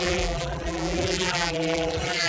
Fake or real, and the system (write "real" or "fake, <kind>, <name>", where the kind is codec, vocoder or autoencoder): fake, vocoder, BigVGAN v2